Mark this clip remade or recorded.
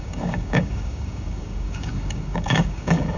remade